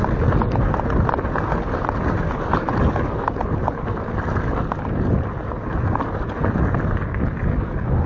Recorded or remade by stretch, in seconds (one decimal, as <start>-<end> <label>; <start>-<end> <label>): 0.0-8.1 recorded